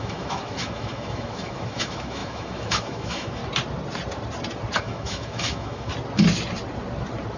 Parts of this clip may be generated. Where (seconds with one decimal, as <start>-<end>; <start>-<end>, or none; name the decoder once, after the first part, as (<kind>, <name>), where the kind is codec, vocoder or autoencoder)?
0.0-3.4 (autoencoder, DAC-VAE); 4.8-5.9